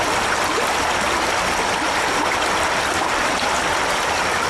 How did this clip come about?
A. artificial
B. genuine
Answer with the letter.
B